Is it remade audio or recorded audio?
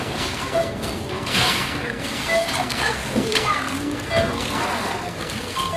remade